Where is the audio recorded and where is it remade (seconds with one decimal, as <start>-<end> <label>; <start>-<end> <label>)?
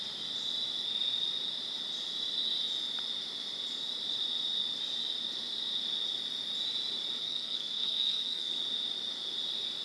0.0-7.2 recorded; 7.2-8.5 remade; 8.5-9.8 recorded